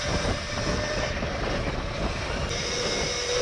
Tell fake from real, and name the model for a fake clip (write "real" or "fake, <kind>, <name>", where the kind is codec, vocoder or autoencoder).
real